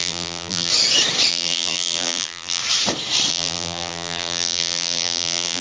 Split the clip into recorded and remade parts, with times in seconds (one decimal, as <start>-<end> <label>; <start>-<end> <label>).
0.0-0.7 remade; 0.7-1.3 recorded; 1.3-2.6 remade; 2.6-3.3 recorded; 3.3-5.6 remade